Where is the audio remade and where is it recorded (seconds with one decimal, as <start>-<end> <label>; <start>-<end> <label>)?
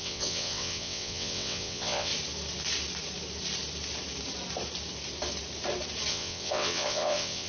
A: 0.0-2.1 remade; 2.1-6.1 recorded; 6.1-7.5 remade